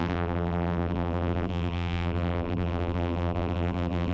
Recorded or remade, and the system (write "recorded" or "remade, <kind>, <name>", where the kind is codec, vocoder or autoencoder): remade, vocoder, BigVGAN v2